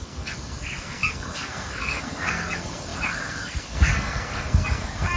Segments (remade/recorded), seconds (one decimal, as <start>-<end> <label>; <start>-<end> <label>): 0.0-5.2 remade